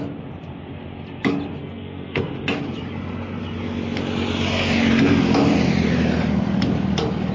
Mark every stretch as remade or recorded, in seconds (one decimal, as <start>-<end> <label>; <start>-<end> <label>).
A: 0.0-1.6 recorded; 1.6-2.3 remade; 2.3-7.3 recorded